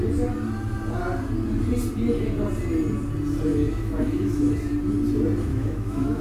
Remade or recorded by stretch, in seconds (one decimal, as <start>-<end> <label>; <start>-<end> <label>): 0.0-3.5 recorded; 3.5-4.6 remade; 4.6-5.5 recorded; 5.5-6.2 remade